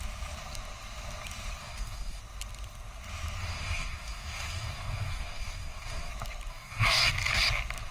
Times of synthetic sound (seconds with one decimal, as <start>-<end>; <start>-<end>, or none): 1.6-2.2; 3.4-6.1; 6.5-7.1